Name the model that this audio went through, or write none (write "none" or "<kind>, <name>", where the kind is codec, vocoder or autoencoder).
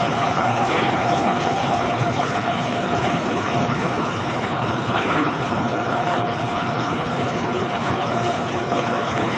codec, HILCodec